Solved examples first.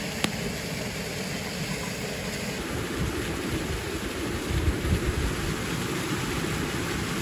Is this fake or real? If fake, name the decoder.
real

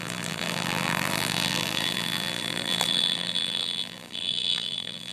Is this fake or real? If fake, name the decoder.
fake, vocoder, BigVGAN v2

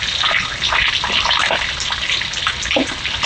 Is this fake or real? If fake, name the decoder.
real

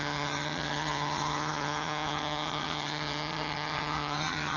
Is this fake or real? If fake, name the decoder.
fake, vocoder, HiFi-GAN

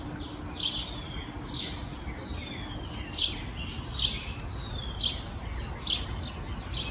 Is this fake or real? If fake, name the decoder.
real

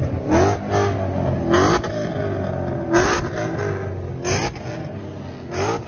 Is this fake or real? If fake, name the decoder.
real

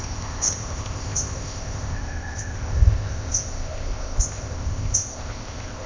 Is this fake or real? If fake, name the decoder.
fake, codec, ZipCodec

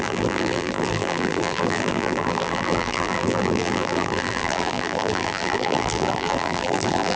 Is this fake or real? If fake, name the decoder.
fake, vocoder, BigVGAN v2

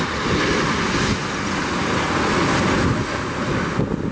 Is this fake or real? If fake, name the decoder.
real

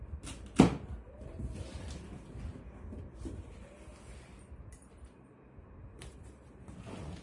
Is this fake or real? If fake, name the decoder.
real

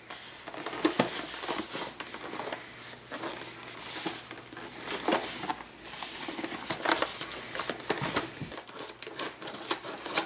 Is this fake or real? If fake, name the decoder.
real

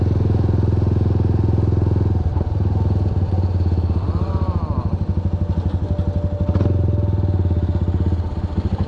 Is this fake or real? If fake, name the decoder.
real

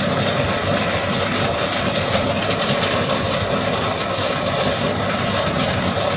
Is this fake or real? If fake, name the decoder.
real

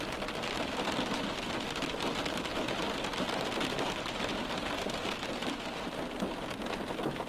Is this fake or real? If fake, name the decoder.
real